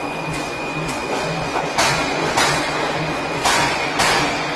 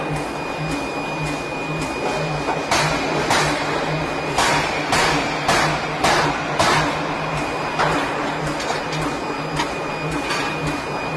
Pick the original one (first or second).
second